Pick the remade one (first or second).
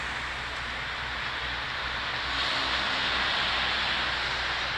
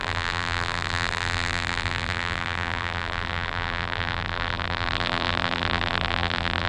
second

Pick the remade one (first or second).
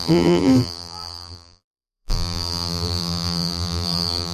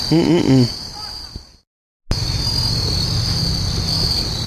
first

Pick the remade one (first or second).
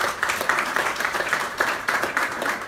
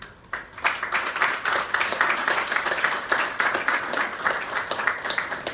first